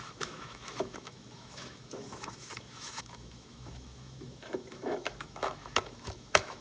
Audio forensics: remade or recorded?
remade